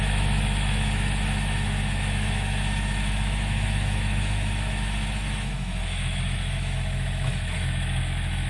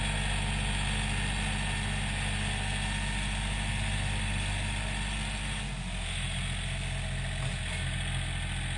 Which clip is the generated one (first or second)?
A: first